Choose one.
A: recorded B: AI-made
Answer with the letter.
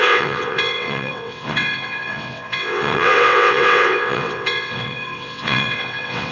B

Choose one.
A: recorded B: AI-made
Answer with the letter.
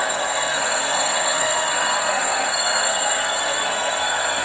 B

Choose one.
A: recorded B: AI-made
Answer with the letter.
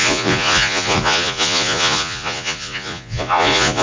B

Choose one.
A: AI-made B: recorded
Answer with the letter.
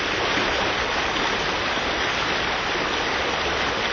B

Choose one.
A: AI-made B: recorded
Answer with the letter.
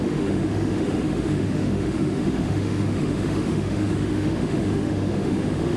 A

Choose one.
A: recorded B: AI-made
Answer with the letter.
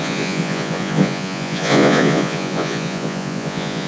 B